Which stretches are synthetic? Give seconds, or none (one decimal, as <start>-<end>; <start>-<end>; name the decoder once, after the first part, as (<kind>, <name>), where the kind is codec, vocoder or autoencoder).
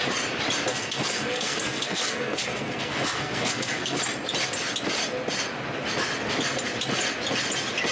0.7-4.0 (codec, SNAC)